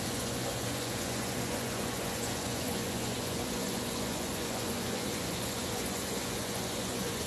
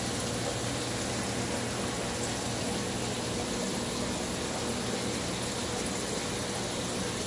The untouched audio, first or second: second